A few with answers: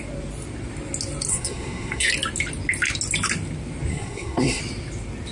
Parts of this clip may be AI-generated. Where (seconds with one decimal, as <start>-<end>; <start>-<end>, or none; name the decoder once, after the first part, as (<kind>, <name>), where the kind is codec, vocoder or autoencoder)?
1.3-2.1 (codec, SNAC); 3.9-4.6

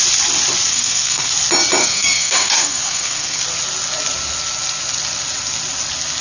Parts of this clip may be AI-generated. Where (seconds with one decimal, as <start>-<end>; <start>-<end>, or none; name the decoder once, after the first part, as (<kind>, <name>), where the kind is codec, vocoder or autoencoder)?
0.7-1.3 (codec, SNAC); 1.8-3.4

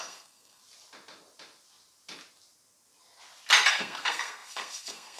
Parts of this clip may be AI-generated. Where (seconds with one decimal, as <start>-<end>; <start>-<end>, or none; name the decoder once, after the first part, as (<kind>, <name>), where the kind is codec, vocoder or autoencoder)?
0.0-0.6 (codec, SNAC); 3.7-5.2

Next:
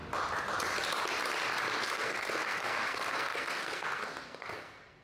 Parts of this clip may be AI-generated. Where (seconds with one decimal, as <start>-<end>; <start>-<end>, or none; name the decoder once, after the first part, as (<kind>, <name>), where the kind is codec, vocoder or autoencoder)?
1.8-5.0 (codec, SNAC)

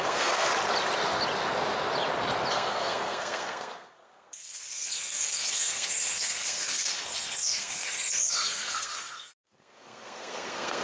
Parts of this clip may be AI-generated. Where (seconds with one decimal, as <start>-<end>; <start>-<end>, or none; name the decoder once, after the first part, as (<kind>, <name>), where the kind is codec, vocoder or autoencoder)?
0.0-0.5 (codec, SNAC); 2.5-10.8

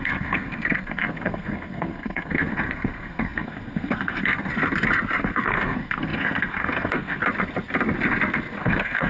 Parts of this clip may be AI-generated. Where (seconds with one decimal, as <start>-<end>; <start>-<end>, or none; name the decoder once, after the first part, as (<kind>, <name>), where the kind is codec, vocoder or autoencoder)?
0.0-4.5 (codec, SNAC); 5.2-7.2; 8.6-9.1

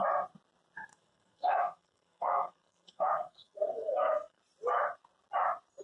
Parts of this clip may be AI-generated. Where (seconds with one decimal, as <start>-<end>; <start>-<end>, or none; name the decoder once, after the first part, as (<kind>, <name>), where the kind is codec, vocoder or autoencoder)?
0.9-4.4 (codec, SNAC)